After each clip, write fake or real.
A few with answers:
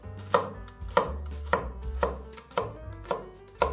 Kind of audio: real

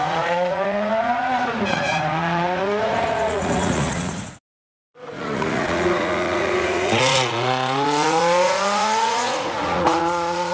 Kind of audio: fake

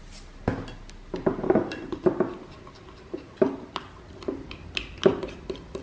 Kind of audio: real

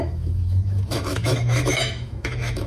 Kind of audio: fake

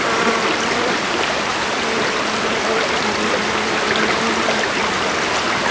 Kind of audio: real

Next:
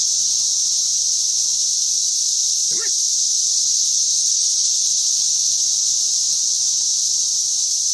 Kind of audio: fake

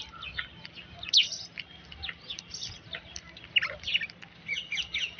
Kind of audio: real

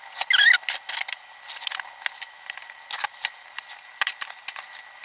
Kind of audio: real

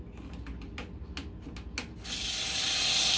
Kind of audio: real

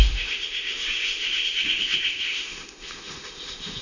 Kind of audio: fake